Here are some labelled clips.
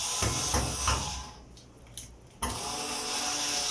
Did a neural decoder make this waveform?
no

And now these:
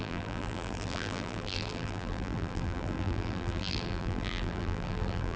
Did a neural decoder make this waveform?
yes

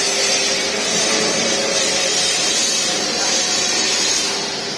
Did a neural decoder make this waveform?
yes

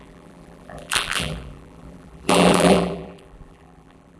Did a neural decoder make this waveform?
yes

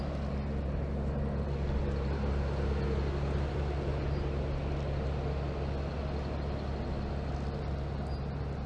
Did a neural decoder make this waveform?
no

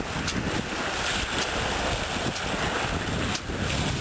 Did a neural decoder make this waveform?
no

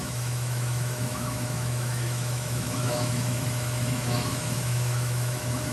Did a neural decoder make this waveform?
yes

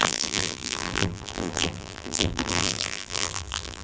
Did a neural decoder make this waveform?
yes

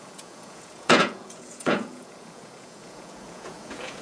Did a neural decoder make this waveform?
yes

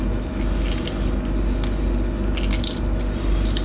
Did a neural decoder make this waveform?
no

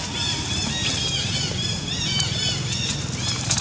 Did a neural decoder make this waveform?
no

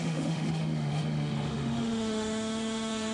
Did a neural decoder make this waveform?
yes